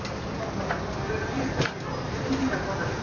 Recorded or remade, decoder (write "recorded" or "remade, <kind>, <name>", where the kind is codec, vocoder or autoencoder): recorded